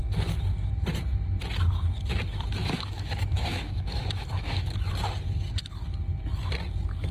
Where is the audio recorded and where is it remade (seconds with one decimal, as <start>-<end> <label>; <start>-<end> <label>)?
0.0-2.6 recorded; 2.6-4.9 remade; 4.9-7.1 recorded